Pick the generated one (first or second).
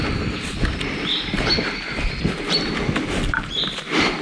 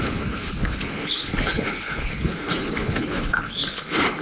second